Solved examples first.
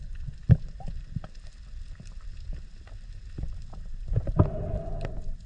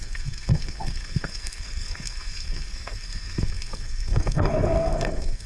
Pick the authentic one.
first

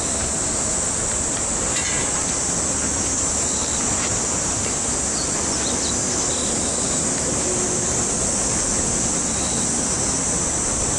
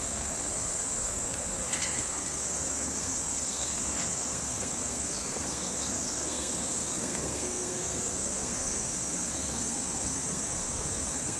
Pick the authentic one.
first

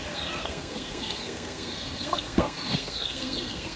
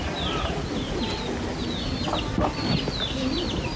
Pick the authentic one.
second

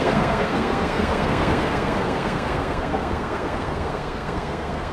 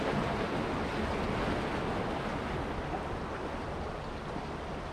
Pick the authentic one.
second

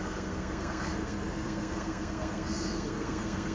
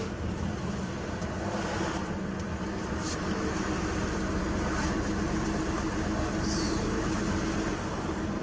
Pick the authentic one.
second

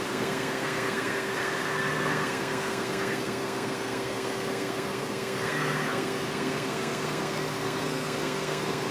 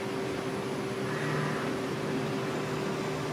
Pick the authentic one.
second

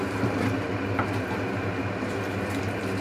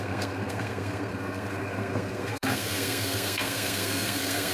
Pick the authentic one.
first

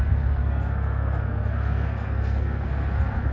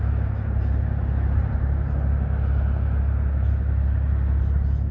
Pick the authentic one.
second